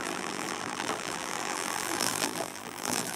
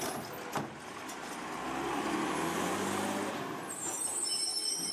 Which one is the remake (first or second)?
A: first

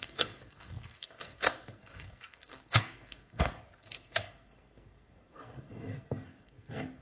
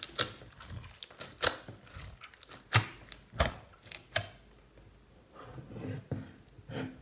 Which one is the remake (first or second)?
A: first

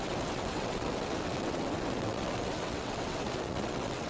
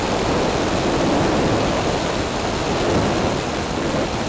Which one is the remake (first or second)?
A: first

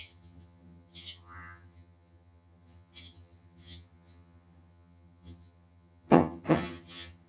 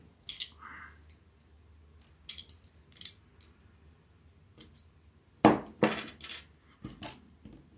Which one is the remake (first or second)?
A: first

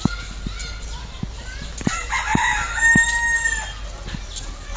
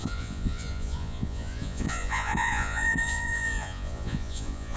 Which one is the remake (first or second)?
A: second